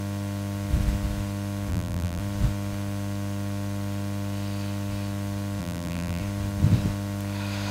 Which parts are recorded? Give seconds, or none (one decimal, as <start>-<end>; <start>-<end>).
0.0-1.7; 2.2-5.6; 6.2-7.7

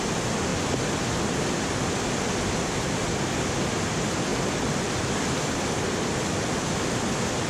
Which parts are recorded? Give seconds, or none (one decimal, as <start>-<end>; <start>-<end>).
0.0-4.3; 6.3-7.5

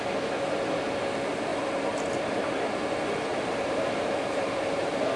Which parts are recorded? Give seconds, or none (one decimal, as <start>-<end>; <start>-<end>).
0.0-1.5; 2.1-3.3

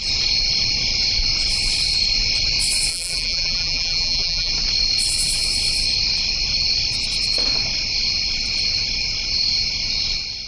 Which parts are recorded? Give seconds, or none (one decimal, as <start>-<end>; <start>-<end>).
0.0-2.9; 4.5-10.5